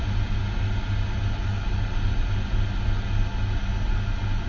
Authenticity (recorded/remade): recorded